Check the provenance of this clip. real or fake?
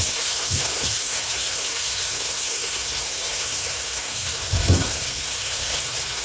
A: fake